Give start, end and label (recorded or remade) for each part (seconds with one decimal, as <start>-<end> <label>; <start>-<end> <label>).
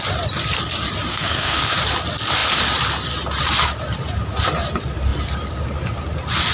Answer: 0.0-1.1 recorded; 1.1-1.7 remade; 1.7-6.5 recorded